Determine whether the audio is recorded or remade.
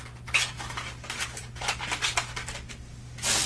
recorded